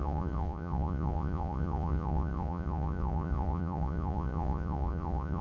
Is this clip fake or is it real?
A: fake